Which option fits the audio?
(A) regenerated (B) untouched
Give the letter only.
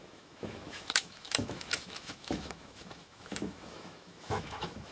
A